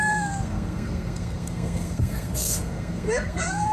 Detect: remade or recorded remade